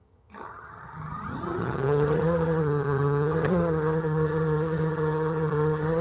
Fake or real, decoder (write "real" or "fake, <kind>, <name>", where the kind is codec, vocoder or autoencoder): fake, vocoder, HiFi-GAN